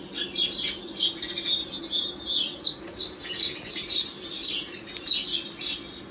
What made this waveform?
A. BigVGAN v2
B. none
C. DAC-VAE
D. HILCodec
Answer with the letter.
B